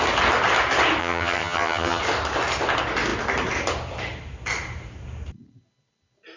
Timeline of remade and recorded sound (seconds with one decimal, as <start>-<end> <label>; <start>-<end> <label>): 0.0-1.0 recorded; 1.0-2.0 remade; 2.0-6.4 recorded